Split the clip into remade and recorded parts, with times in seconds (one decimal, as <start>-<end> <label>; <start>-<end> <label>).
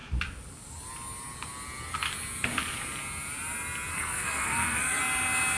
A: 0.0-3.9 recorded; 3.9-5.0 remade; 5.0-5.6 recorded